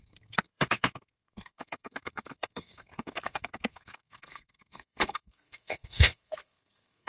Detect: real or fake fake